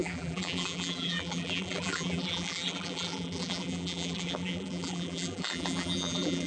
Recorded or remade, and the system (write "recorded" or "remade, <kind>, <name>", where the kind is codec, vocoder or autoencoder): remade, vocoder, BigVGAN v2